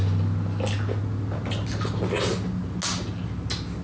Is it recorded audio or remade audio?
recorded